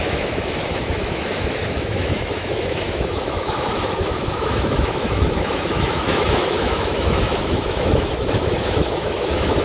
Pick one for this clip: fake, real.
fake